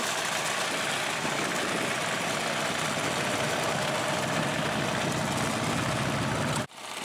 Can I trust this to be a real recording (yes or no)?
yes